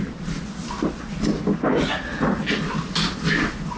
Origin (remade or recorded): recorded